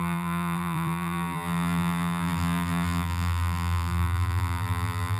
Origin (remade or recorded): remade